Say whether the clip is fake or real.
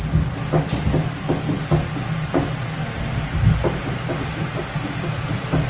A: real